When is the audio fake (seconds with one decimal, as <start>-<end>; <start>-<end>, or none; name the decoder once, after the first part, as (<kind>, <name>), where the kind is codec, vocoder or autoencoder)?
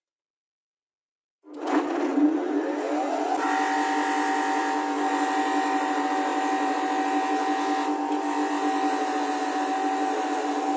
none